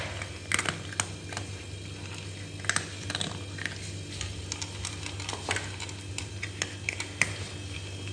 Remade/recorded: recorded